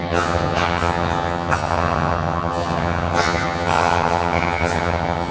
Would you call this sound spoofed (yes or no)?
yes